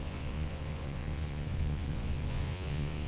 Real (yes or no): no